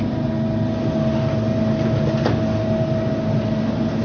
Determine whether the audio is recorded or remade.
recorded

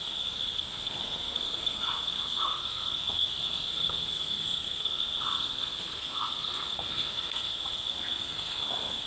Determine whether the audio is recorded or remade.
remade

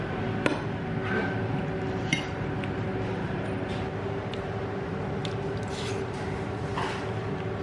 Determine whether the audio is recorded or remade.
recorded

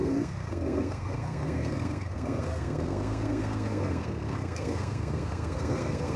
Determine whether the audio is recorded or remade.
remade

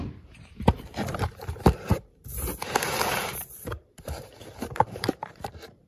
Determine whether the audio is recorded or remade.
remade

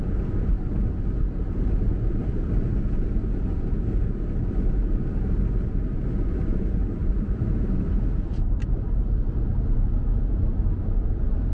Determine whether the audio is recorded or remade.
recorded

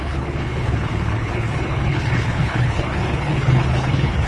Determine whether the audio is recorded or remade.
remade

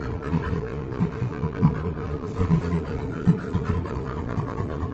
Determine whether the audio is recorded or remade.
remade